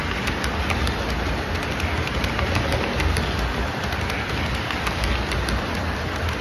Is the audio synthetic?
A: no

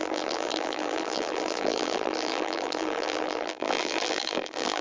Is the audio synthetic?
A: yes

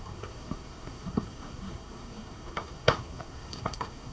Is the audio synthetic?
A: yes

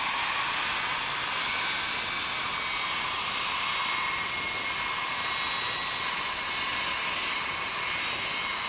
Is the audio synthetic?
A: no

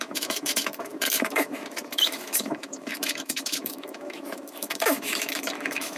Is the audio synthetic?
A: yes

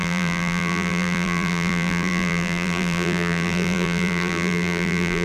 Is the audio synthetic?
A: yes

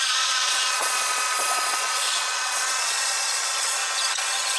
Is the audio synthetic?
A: yes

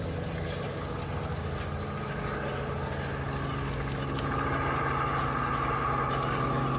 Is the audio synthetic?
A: no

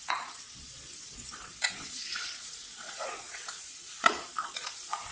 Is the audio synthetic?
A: yes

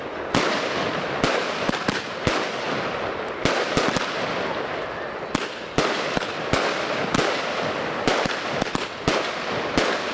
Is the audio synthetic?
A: no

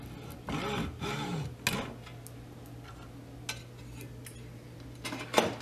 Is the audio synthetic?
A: no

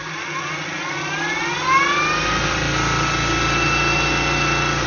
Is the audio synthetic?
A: no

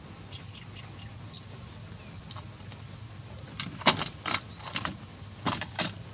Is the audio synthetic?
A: no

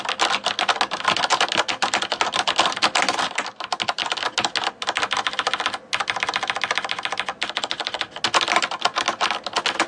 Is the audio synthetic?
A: no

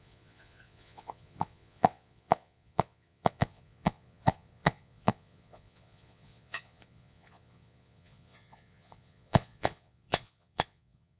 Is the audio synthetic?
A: yes